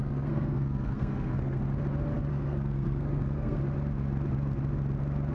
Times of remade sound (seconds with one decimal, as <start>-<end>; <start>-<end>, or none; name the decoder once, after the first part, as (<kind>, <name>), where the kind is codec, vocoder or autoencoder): 0.0-1.6 (codec, SNAC); 2.3-3.6